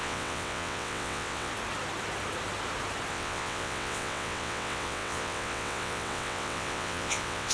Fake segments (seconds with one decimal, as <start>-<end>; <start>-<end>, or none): 0.0-1.5; 3.1-7.5